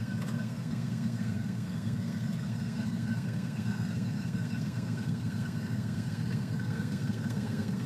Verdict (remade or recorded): remade